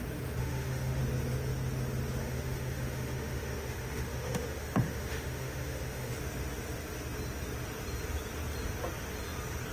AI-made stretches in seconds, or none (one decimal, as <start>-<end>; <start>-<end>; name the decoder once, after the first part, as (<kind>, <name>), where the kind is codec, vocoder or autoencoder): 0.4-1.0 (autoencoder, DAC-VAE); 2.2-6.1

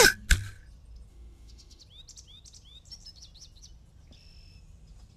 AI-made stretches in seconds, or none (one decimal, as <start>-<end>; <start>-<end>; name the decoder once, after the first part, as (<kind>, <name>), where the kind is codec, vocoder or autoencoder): 1.1-1.8 (autoencoder, DAC-VAE)

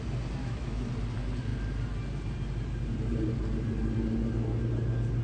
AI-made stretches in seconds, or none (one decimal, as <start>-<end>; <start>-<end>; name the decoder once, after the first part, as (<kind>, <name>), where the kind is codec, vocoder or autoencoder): 0.4-0.9 (autoencoder, DAC-VAE)

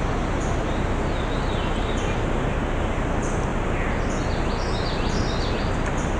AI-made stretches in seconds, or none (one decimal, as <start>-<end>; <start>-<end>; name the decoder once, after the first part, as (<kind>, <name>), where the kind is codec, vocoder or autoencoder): none

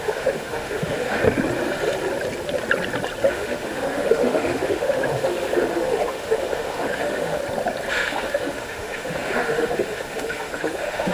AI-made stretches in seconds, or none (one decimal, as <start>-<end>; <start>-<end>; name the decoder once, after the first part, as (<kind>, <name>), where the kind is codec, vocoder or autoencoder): 0.0-1.2 (autoencoder, DAC-VAE); 3.3-7.4; 7.9-11.1

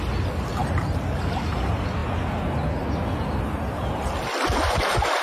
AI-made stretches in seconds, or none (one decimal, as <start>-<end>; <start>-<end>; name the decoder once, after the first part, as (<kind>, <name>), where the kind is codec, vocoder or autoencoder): none

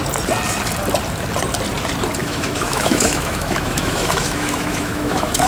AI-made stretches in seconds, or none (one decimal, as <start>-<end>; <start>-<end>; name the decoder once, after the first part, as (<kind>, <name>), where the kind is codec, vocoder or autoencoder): 2.2-5.5 (autoencoder, DAC-VAE)

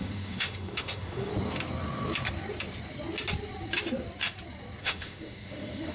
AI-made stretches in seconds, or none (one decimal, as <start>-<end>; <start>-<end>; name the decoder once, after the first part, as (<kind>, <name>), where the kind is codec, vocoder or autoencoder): 0.0-1.3 (autoencoder, DAC-VAE); 4.8-5.9